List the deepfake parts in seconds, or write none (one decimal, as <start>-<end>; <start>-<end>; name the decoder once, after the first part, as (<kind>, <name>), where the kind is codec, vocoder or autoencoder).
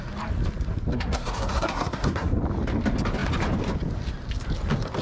0.9-2.4 (codec, SNAC)